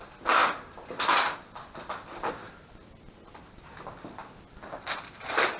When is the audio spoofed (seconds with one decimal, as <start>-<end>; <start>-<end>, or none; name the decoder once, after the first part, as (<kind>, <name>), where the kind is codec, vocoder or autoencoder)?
none